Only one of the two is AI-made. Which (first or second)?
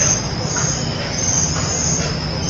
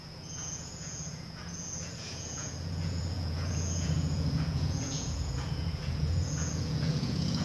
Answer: second